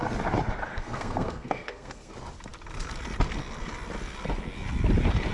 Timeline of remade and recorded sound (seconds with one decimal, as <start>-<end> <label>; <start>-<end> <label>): 0.0-0.7 recorded; 0.7-2.1 remade; 2.1-5.3 recorded